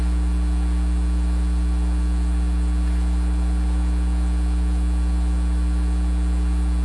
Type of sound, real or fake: real